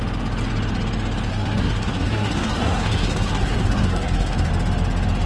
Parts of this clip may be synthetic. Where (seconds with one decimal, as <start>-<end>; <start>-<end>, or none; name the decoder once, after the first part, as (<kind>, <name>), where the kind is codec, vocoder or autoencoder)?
1.3-4.5 (codec, SNAC)